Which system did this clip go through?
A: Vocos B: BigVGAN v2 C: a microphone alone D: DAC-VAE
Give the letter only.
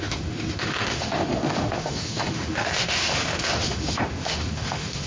D